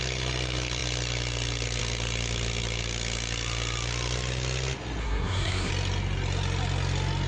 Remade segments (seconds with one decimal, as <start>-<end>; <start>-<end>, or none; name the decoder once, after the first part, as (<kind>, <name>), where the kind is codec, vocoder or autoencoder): 5.0-5.7 (codec, SNAC)